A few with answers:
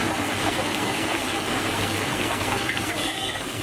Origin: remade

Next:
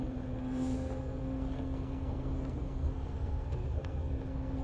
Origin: remade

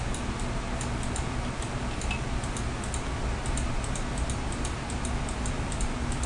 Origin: recorded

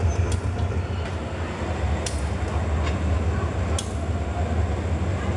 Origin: recorded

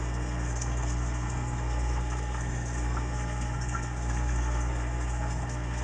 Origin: remade